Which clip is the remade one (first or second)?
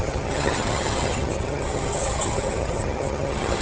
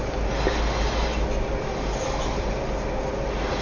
first